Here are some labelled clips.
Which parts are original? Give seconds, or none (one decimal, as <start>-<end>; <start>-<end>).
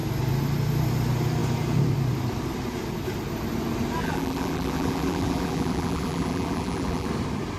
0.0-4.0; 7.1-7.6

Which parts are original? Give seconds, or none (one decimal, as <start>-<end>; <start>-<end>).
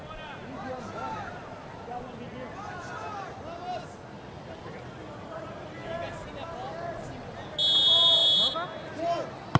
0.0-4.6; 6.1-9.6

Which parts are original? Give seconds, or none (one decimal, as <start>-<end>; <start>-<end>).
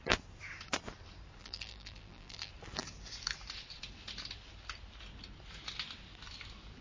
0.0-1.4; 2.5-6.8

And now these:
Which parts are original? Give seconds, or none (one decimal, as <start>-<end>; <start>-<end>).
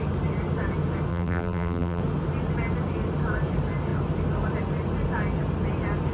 0.0-1.1; 2.0-6.1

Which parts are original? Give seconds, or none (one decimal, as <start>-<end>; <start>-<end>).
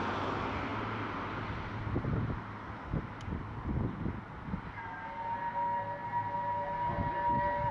0.0-7.7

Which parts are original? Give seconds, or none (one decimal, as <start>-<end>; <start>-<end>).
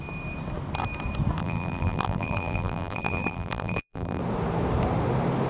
0.0-1.4; 4.2-5.5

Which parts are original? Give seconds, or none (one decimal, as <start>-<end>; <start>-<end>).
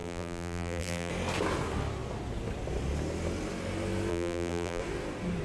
1.1-4.1; 4.8-5.4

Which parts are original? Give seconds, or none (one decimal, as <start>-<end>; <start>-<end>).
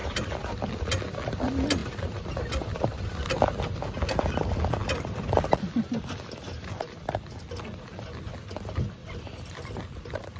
0.7-1.8; 2.8-4.8; 5.9-9.0; 9.8-10.4